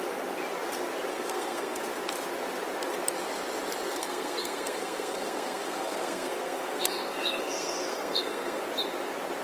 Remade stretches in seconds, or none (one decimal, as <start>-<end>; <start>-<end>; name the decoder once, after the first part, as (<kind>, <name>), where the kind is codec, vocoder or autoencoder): 1.1-1.8 (codec, SNAC); 3.9-8.6